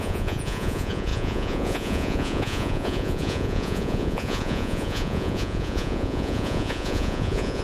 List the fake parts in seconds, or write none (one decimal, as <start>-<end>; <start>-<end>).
0.0-7.6